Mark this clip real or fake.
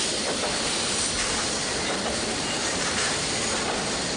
fake